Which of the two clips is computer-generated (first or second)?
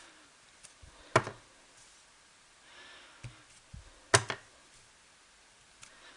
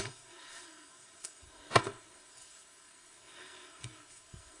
second